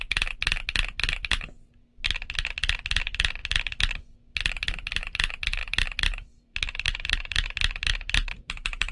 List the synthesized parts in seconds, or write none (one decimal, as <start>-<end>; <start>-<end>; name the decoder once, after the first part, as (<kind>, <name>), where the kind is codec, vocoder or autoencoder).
5.6-8.9 (vocoder, BigVGAN v2)